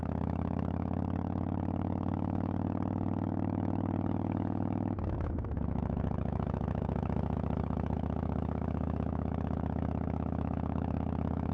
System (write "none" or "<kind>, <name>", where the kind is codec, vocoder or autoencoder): autoencoder, DAC-VAE